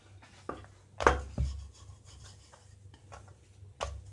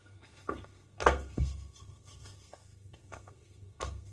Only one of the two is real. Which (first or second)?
first